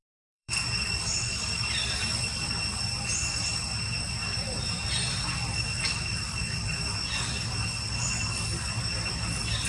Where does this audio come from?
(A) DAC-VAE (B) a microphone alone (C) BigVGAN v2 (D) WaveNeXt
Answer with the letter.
C